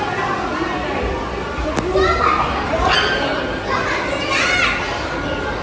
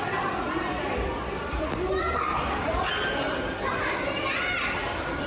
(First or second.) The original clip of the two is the first